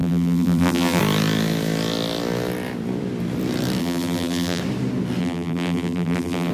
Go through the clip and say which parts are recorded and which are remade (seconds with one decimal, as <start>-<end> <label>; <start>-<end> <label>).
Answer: 0.0-1.0 remade; 1.0-3.8 recorded; 3.8-4.6 remade; 4.6-5.2 recorded; 5.2-6.5 remade